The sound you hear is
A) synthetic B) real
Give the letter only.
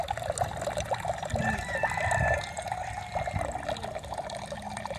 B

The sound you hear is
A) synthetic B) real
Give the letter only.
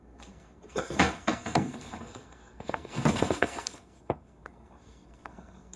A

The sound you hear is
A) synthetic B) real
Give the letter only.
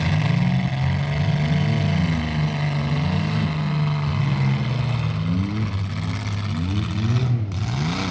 B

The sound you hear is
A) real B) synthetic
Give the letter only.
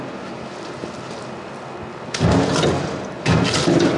A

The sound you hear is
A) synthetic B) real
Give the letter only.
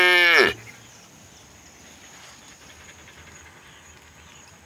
B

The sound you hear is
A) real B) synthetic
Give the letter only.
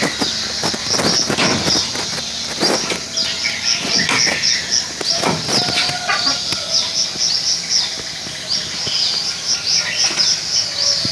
A